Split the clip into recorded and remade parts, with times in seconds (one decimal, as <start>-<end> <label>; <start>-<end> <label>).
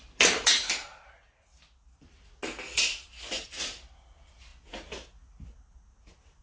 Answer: 0.0-6.4 recorded